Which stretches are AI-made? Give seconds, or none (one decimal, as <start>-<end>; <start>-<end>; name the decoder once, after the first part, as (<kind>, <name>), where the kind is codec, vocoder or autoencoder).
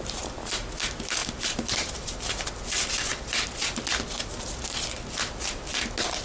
1.2-2.5 (vocoder, BigVGAN v2); 3.1-4.0